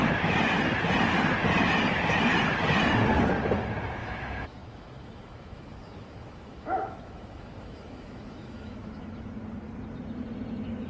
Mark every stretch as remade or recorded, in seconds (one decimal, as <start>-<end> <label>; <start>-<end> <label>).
0.0-4.0 recorded; 4.0-9.3 remade; 9.3-10.9 recorded